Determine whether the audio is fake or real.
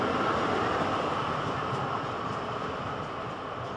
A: real